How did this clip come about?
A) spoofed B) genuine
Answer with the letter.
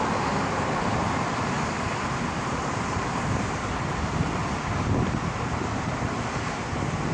B